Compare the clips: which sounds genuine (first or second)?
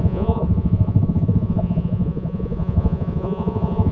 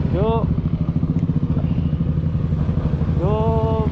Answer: second